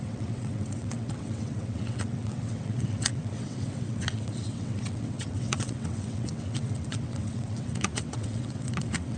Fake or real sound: fake